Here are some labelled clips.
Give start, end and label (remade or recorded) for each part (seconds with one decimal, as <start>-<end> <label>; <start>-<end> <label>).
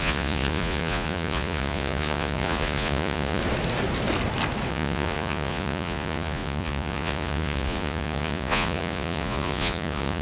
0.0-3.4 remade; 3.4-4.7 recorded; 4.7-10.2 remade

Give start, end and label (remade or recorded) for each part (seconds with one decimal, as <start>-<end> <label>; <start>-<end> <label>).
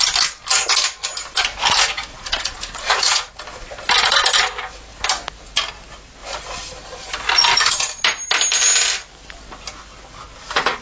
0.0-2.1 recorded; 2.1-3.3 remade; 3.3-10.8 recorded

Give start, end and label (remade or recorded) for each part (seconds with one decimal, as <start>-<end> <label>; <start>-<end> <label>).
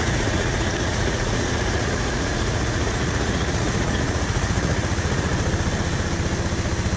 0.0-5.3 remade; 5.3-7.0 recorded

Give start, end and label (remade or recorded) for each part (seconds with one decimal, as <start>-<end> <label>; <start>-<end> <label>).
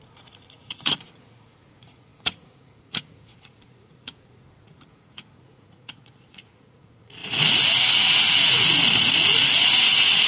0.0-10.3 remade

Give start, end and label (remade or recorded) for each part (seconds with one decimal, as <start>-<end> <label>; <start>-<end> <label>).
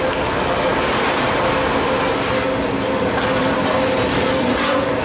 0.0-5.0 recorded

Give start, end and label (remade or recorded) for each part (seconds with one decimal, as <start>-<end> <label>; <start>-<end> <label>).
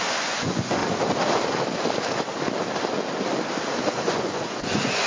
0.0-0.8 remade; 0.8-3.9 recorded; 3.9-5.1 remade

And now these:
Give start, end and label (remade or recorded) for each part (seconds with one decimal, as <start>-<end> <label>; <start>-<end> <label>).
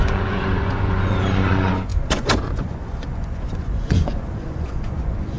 0.0-5.4 remade